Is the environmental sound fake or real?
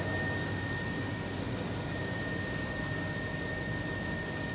real